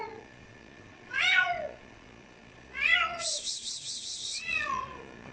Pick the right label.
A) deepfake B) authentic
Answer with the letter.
A